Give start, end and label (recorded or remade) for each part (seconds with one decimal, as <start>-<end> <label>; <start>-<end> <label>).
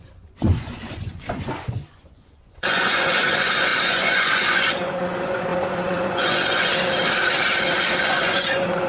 0.0-6.7 remade; 6.7-8.0 recorded; 8.0-8.9 remade